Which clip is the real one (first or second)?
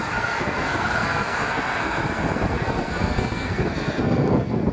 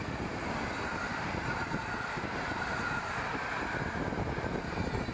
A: second